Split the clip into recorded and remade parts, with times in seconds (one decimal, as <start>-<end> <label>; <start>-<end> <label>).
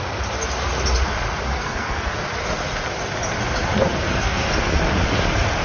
0.0-1.5 recorded; 1.5-2.1 remade; 2.1-3.8 recorded; 3.8-4.5 remade; 4.5-5.6 recorded